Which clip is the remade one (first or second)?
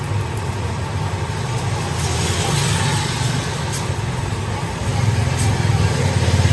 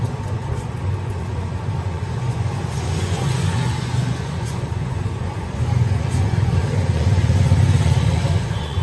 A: second